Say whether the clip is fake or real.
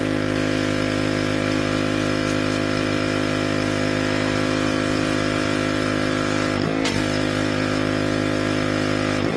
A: real